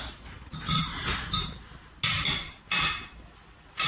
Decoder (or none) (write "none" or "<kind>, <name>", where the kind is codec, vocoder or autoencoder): none